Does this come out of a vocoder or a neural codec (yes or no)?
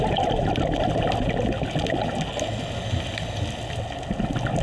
no